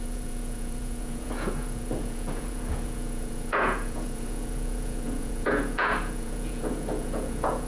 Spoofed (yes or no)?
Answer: yes